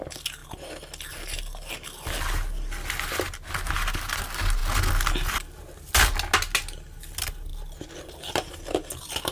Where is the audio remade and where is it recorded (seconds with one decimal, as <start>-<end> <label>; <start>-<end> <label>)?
0.0-9.3 recorded